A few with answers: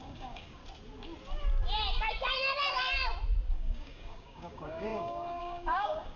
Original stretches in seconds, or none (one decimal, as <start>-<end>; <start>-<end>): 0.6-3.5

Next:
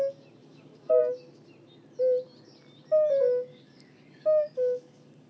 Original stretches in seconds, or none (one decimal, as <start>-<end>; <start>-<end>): 0.0-0.4; 1.0-3.5

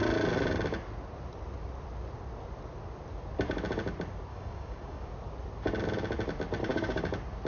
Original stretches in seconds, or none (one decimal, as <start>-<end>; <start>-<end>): 0.0-4.3; 5.1-6.6; 7.1-7.5

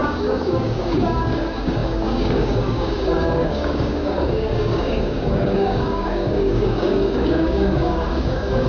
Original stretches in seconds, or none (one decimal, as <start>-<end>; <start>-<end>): none

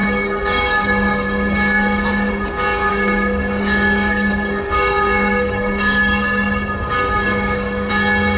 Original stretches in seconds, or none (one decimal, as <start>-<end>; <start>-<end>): 2.3-2.9; 7.9-8.4

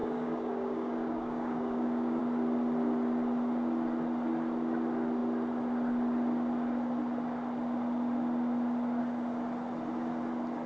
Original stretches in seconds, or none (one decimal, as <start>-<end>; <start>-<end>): 2.2-10.7

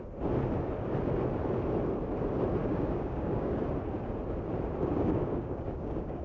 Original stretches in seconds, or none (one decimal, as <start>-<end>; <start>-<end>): 0.0-2.6; 3.6-4.9